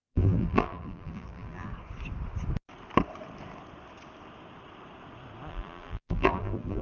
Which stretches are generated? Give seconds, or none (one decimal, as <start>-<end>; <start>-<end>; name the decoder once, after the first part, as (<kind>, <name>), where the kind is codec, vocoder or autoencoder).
0.0-1.7 (vocoder, BigVGAN v2); 5.5-6.8